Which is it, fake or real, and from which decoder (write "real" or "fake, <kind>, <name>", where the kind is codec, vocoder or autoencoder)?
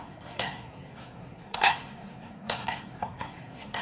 fake, codec, SNAC